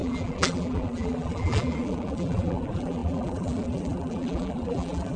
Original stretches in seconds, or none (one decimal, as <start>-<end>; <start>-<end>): none